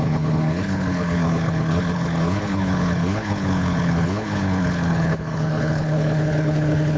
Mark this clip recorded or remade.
remade